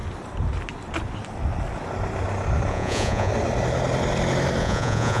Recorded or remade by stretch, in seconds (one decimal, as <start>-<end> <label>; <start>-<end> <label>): 0.0-2.7 recorded; 2.7-3.3 remade; 3.3-4.6 recorded; 4.6-5.2 remade